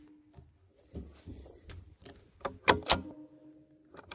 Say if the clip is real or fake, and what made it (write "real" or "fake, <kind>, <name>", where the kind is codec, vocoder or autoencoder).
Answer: real